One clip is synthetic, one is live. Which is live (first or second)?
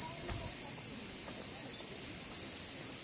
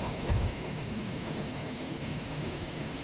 first